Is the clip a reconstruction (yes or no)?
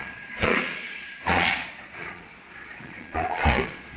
yes